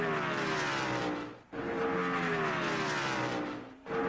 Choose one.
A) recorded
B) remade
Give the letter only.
A